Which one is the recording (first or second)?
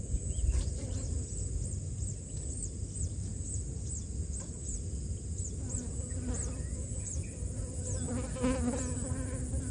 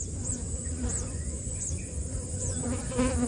first